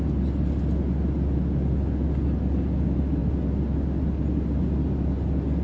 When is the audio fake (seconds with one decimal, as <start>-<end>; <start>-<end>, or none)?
none